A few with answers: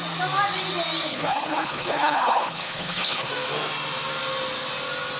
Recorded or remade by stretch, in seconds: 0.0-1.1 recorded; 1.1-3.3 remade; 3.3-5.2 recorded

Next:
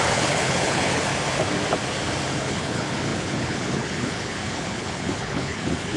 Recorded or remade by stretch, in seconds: 0.0-1.1 remade; 1.1-2.4 recorded; 2.4-6.0 remade

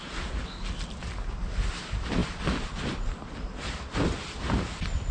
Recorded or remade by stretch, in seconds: 0.0-5.1 recorded

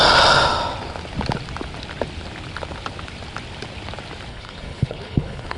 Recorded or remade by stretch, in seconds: 0.0-4.3 recorded; 4.3-5.6 remade

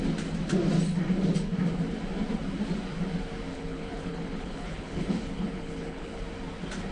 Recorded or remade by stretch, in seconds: 0.0-3.5 recorded; 3.5-6.2 remade; 6.2-6.9 recorded

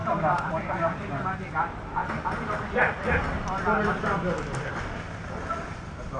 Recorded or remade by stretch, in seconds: 0.0-6.2 recorded

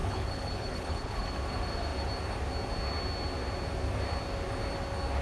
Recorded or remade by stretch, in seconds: 0.0-1.2 remade; 1.2-5.2 recorded